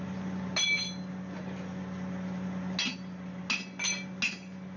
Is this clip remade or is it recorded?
recorded